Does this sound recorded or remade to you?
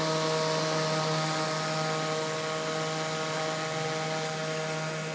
recorded